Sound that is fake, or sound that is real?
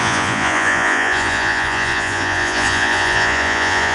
fake